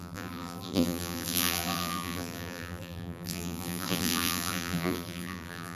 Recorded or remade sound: remade